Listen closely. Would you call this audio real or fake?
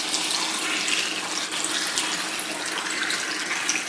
real